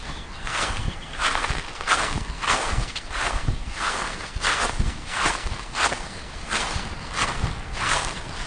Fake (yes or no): yes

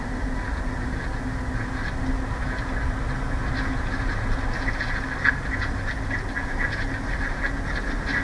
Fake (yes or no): no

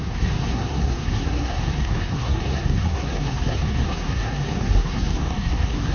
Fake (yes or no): yes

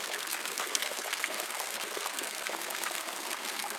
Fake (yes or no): yes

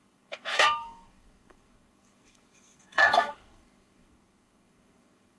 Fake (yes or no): yes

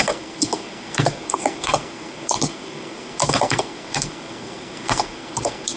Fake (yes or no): yes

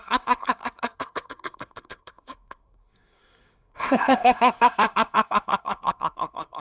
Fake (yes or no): yes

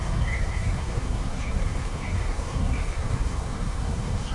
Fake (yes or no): yes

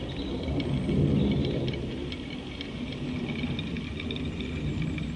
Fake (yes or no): no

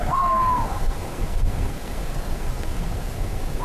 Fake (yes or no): yes